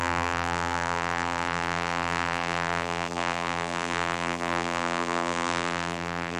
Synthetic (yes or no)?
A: yes